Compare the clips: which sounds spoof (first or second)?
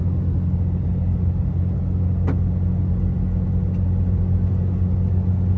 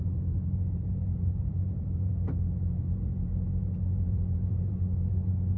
second